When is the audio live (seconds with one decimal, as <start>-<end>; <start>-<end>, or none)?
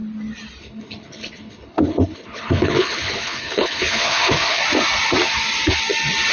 0.0-0.6; 4.6-6.3